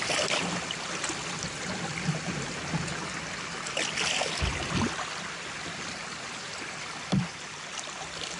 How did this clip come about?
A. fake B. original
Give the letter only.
B